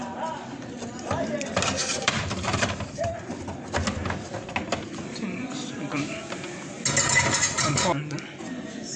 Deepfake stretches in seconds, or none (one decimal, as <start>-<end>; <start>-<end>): 1.8-3.1